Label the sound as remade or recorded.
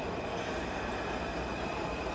recorded